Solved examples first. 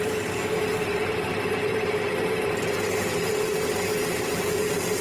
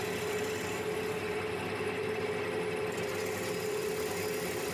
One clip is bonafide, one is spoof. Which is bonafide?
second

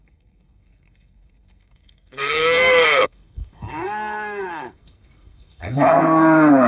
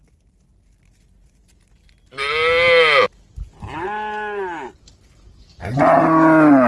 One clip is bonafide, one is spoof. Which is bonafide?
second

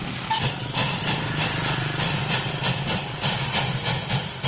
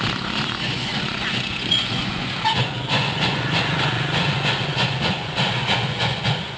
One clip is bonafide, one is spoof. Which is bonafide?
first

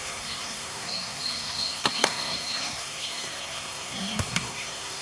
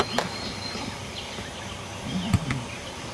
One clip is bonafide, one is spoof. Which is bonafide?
second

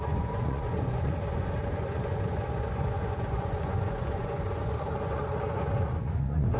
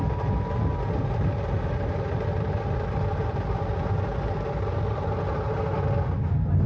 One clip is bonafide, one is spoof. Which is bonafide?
second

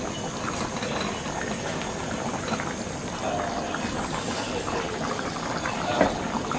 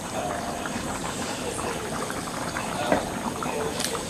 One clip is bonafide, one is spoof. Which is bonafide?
first